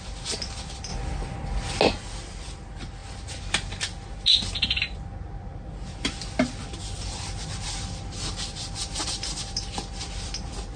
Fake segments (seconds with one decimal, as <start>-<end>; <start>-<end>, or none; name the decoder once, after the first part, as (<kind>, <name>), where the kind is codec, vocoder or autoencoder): none